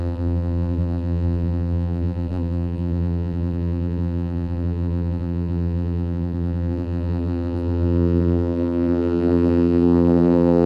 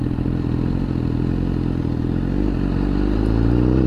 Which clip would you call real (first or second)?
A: second